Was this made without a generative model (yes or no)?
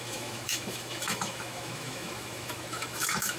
no